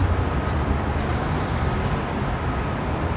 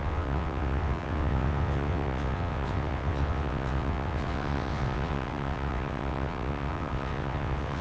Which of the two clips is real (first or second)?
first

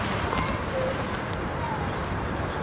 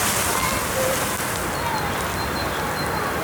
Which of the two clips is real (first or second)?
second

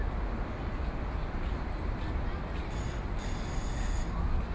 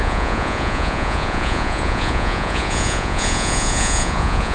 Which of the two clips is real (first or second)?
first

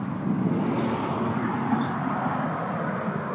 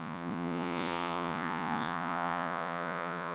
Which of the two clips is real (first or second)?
first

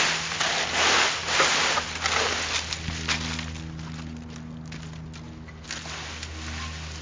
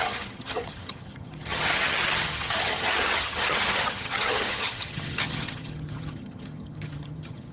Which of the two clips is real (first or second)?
first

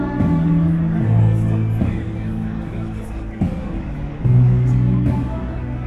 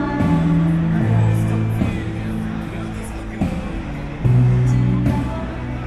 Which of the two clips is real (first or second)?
second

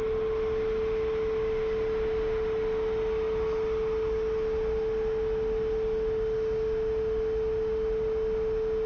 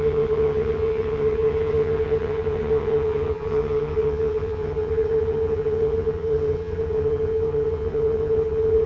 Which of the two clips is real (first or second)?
first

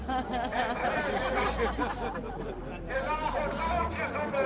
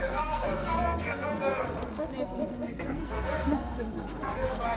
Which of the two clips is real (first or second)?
first